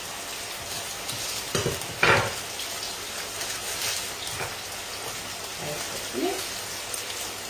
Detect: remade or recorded recorded